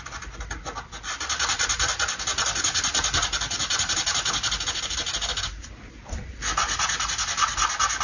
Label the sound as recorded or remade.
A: recorded